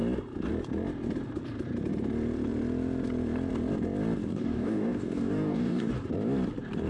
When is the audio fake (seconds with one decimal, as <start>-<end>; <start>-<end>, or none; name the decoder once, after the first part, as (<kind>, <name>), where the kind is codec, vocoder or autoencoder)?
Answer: 4.3-5.9 (codec, DAC)